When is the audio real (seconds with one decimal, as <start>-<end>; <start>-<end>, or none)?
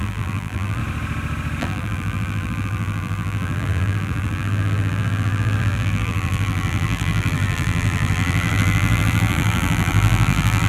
0.8-1.6